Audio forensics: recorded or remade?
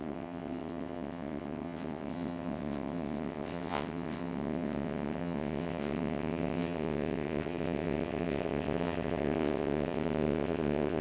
remade